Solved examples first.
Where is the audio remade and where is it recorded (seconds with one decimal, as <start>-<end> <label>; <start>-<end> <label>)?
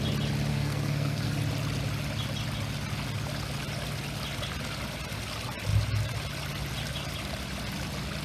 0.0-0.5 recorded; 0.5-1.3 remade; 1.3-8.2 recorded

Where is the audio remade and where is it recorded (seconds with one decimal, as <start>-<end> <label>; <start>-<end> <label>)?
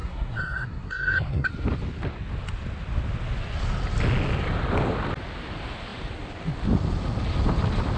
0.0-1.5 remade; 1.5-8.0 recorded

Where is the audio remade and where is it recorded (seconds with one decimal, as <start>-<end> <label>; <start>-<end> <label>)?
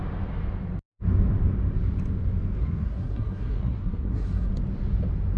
0.0-2.6 recorded; 2.6-4.5 remade; 4.5-5.4 recorded